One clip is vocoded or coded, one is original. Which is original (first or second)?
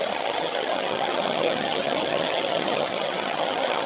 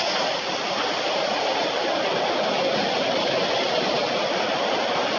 second